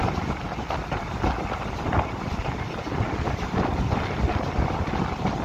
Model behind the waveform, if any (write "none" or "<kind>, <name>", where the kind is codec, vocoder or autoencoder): none